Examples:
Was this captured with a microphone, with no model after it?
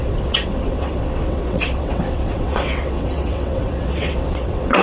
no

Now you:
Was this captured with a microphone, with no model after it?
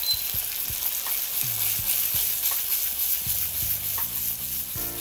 yes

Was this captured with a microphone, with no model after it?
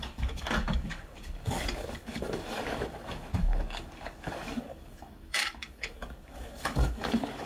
no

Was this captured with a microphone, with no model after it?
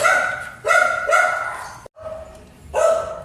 yes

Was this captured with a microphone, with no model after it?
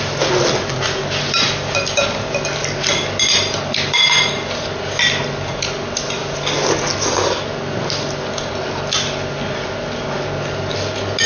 yes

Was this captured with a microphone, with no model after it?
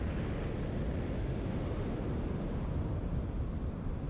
yes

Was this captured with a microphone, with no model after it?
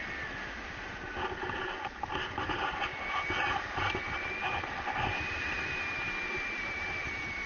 yes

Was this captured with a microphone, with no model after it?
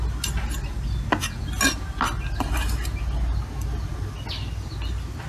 yes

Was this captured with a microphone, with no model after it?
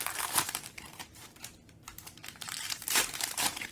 no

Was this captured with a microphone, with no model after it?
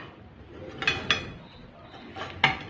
yes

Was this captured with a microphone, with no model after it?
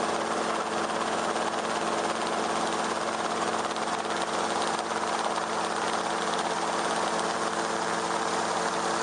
yes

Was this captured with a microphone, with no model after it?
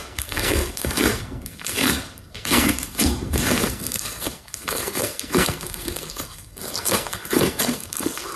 no